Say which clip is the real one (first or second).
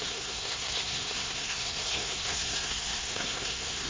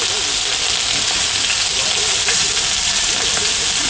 second